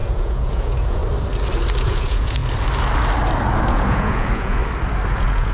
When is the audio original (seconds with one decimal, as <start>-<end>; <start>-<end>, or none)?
1.0-1.8; 2.4-3.7; 4.6-5.1